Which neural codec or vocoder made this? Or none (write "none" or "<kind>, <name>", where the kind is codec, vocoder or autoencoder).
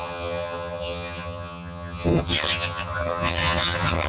vocoder, HiFi-GAN